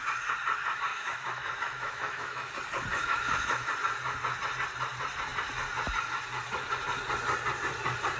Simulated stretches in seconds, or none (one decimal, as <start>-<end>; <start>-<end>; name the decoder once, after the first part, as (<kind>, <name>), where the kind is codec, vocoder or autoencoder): 0.9-2.5 (autoencoder, DAC-VAE); 2.9-3.7